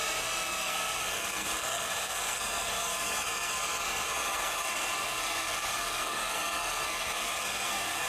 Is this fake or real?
fake